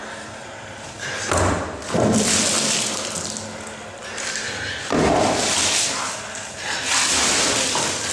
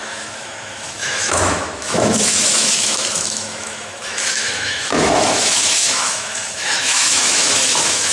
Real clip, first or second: first